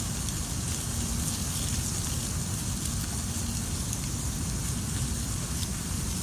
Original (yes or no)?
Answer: yes